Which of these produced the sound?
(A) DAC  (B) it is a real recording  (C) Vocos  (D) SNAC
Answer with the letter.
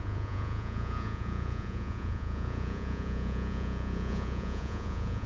C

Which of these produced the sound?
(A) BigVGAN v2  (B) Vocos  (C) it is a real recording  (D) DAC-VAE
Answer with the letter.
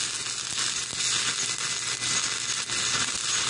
C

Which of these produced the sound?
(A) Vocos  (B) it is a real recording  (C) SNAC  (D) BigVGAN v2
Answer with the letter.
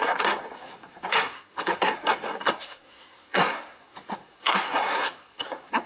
C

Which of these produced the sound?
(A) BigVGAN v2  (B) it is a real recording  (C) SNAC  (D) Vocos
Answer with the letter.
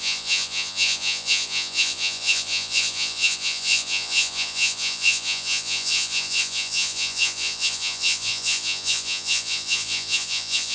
D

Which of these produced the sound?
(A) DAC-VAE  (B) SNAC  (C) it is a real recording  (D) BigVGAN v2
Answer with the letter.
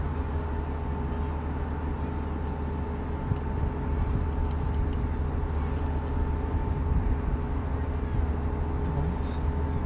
C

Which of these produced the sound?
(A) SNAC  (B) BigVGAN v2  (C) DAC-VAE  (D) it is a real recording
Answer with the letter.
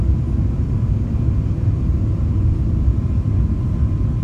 D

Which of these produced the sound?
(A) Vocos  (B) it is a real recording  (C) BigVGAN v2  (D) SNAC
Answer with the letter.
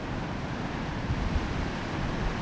B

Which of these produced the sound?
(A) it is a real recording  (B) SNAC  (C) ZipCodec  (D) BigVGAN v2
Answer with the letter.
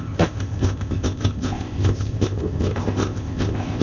C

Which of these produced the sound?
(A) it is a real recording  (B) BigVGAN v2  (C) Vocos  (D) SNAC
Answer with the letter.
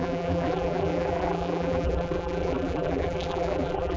B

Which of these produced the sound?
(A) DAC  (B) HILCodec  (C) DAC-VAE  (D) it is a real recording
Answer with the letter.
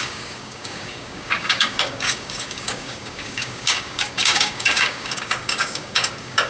A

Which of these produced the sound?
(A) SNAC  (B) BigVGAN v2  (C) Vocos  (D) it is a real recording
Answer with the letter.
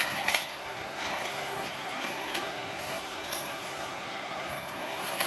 A